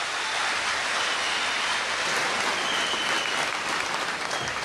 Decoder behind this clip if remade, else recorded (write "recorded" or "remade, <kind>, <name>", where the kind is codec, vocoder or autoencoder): recorded